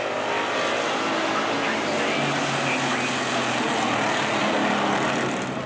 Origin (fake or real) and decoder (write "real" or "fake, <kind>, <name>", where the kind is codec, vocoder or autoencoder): real